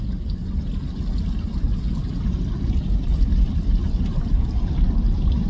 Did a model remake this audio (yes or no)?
no